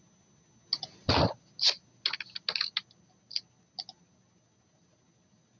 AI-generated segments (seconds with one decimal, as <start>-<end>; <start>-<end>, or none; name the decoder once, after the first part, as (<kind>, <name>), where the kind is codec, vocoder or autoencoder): none